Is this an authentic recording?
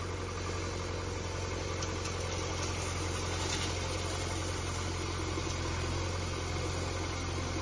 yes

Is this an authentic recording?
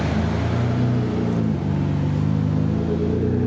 yes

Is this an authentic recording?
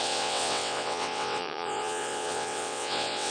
no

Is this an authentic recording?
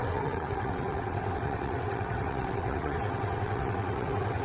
no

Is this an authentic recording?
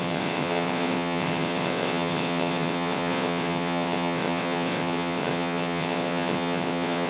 no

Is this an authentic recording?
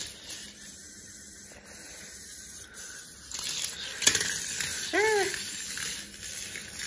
yes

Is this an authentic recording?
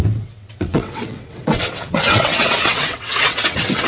no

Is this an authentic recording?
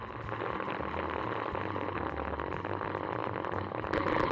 yes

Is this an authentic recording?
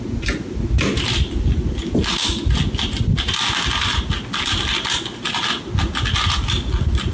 yes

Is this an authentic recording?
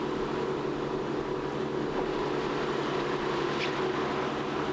yes